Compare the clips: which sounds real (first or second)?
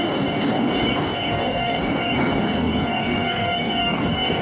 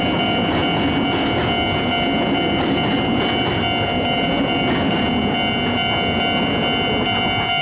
second